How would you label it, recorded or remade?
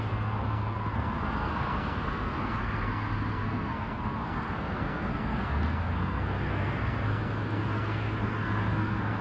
remade